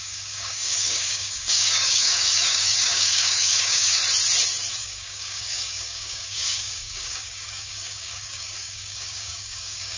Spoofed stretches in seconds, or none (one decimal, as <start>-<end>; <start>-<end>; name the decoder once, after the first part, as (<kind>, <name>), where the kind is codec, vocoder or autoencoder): 0.0-4.0 (codec, DAC); 4.8-10.0